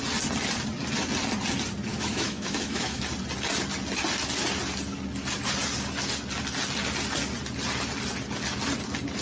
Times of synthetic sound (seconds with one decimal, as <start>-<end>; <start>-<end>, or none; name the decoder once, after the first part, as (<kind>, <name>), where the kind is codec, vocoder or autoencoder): 1.9-3.0 (autoencoder, DAC-VAE)